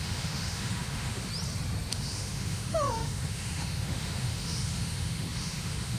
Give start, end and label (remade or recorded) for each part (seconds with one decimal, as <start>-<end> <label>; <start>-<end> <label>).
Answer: 0.0-1.3 remade; 1.3-1.9 recorded; 1.9-6.0 remade